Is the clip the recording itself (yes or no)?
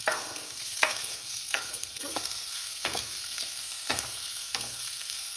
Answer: no